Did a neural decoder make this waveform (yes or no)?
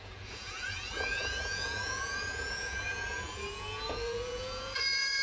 yes